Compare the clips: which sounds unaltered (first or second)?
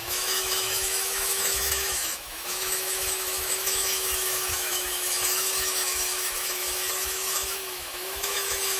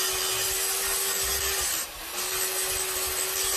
second